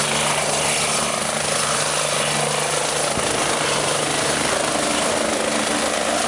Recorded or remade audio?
recorded